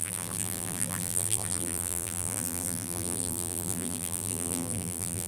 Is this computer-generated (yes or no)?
yes